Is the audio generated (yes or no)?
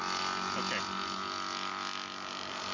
no